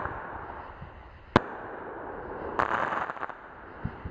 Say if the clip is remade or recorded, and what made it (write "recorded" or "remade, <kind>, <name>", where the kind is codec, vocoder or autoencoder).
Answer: recorded